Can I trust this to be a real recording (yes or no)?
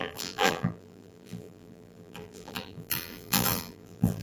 no